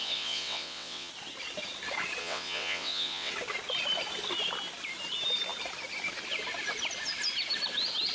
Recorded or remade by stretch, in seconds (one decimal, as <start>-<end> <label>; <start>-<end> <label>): 0.0-1.1 remade; 1.1-2.2 recorded; 2.2-3.3 remade; 3.3-8.1 recorded